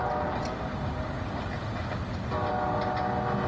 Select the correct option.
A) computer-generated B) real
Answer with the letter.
B